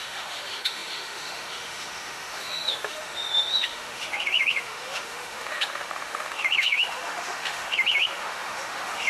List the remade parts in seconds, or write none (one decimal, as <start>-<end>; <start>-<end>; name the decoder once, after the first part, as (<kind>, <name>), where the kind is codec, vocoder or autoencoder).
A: 0.0-9.1 (autoencoder, DAC-VAE)